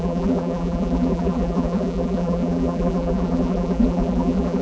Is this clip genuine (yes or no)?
no